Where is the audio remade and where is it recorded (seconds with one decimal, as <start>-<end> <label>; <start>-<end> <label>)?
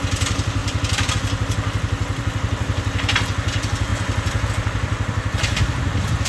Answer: 0.0-3.9 remade; 3.9-4.5 recorded; 4.5-6.3 remade